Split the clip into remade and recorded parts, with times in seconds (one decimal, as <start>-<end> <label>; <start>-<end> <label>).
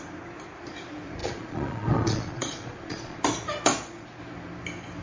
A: 0.0-1.2 recorded; 1.2-3.2 remade; 3.2-3.7 recorded; 3.7-4.2 remade; 4.2-5.0 recorded